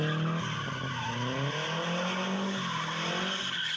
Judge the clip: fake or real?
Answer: real